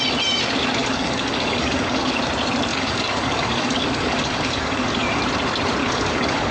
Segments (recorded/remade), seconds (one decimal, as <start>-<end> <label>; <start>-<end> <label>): 0.0-0.8 recorded; 0.8-2.2 remade; 2.2-2.7 recorded; 2.7-5.2 remade; 5.2-5.8 recorded; 5.8-6.5 remade